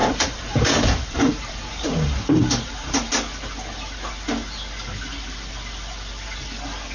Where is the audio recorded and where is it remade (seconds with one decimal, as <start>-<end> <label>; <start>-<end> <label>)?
0.0-3.1 remade; 3.1-6.9 recorded